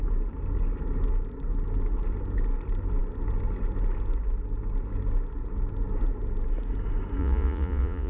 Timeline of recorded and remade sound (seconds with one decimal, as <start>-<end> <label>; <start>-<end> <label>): 0.0-7.2 recorded; 7.2-8.1 remade

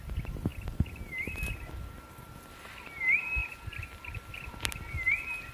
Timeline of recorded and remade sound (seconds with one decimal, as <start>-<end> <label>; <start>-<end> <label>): 0.0-5.5 recorded

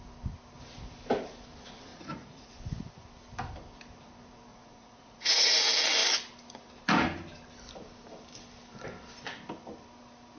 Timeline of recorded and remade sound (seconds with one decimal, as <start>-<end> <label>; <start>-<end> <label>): 0.0-1.9 recorded; 1.9-2.5 remade; 2.5-4.5 recorded; 4.5-5.6 remade; 5.6-10.4 recorded

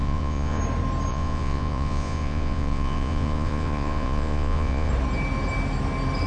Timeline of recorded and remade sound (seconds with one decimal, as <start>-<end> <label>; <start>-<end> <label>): 0.0-0.6 remade; 0.6-1.1 recorded; 1.1-4.9 remade; 4.9-6.3 recorded

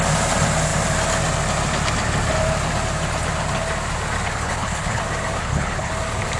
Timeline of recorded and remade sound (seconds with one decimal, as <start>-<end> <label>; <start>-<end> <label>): 0.0-4.3 recorded; 4.3-5.0 remade; 5.0-5.4 recorded; 5.4-5.9 remade; 5.9-6.4 recorded